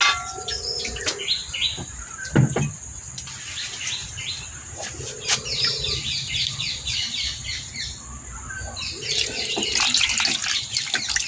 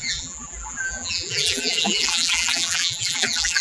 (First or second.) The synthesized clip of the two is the second